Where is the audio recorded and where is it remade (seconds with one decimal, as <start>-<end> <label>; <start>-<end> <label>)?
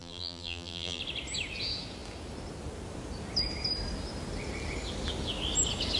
0.0-1.0 remade; 1.0-6.0 recorded